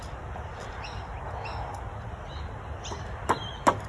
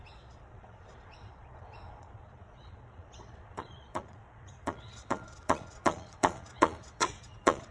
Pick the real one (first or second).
first